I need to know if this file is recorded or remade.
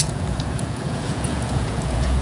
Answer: remade